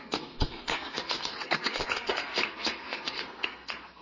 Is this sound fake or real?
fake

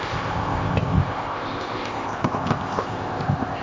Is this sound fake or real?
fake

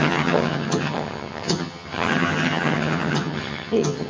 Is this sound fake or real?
fake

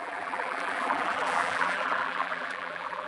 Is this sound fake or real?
fake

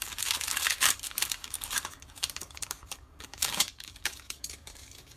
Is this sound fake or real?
fake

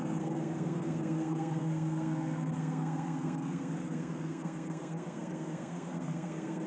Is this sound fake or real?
fake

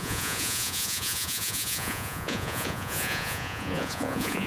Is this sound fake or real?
fake